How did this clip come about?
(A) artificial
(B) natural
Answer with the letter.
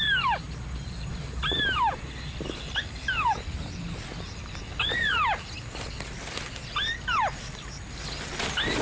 B